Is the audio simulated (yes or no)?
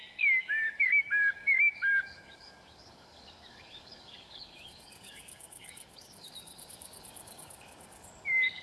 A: yes